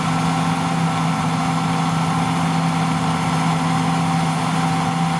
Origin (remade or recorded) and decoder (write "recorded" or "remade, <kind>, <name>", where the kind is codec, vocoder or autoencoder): recorded